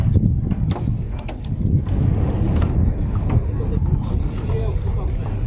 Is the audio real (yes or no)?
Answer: yes